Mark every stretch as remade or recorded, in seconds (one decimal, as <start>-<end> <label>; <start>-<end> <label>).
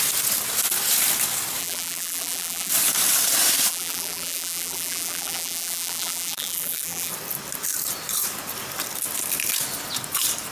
0.0-1.6 recorded; 1.6-2.7 remade; 2.7-3.7 recorded; 3.7-7.1 remade; 7.1-10.5 recorded